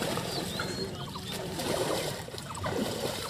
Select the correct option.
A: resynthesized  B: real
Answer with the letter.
A